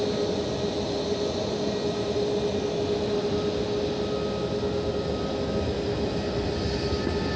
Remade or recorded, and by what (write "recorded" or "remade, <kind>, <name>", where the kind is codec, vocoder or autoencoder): recorded